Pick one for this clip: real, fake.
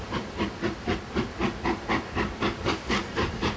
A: real